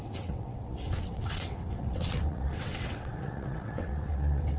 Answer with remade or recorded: remade